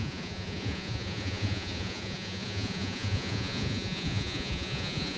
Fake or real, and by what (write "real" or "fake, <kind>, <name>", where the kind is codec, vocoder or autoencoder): fake, vocoder, Vocos